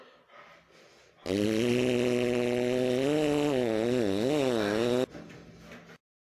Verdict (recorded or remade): recorded